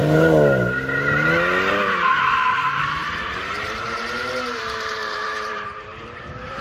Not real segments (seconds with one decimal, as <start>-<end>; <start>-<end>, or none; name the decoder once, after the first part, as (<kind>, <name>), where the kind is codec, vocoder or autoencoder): 1.7-6.6 (vocoder, BigVGAN v2)